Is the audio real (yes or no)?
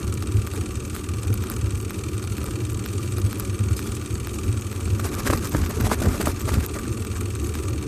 yes